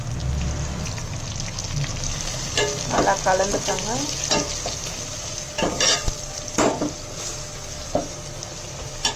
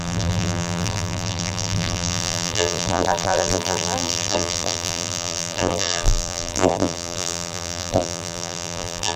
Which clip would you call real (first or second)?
first